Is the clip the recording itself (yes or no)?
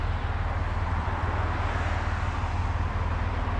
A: yes